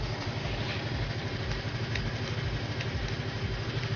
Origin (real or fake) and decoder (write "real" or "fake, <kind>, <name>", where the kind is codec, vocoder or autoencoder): real